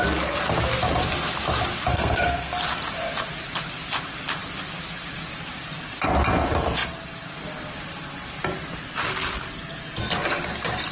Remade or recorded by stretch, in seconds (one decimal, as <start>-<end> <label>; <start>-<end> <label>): 0.0-1.9 recorded; 1.9-2.5 remade; 2.5-10.9 recorded